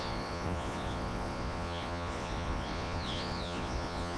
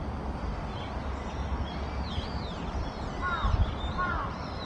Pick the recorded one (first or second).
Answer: second